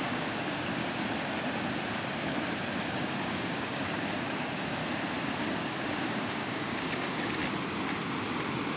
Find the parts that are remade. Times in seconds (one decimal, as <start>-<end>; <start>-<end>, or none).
0.0-0.8; 2.8-4.8; 5.6-7.4